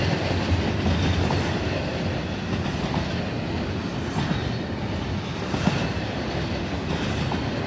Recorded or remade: recorded